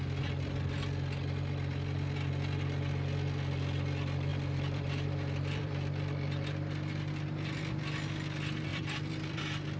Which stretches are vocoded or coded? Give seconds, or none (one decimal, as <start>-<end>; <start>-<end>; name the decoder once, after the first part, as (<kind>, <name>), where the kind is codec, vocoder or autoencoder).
4.3-7.7 (vocoder, BigVGAN v2); 8.7-9.4